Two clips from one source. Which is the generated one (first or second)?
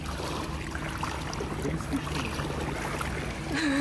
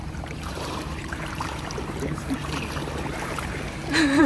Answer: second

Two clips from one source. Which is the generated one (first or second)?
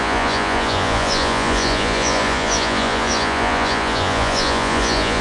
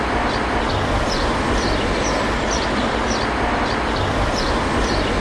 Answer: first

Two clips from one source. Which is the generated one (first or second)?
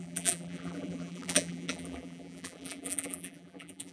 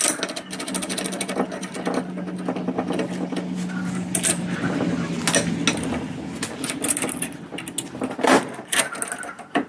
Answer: first